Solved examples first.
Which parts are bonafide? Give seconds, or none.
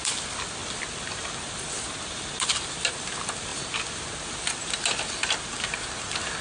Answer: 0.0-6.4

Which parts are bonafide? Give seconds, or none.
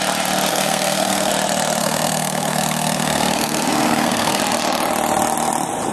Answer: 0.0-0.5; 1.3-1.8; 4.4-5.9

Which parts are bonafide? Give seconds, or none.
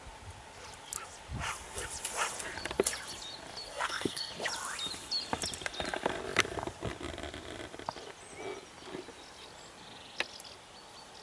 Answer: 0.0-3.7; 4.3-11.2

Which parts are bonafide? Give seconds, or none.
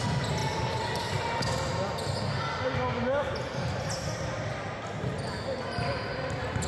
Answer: 0.0-6.7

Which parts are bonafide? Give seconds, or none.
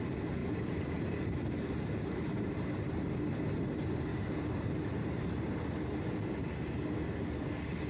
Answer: 0.0-0.4; 3.2-4.1; 6.3-7.9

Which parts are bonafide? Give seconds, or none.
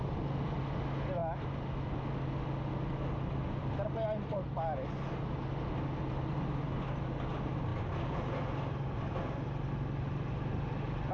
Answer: 0.0-11.1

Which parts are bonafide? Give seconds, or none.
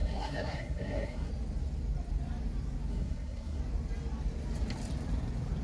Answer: 1.3-2.9; 3.6-5.6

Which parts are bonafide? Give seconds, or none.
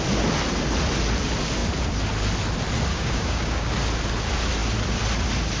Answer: 0.0-2.9; 3.7-5.6